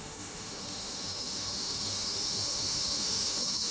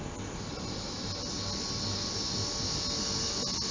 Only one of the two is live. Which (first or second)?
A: second